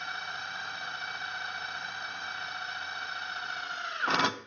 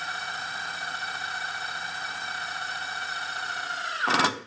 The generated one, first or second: second